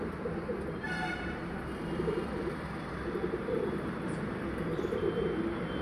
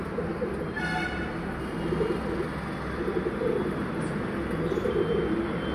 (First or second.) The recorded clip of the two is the second